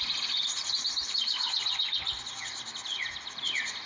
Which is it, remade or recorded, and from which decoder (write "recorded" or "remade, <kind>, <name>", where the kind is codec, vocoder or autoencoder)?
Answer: recorded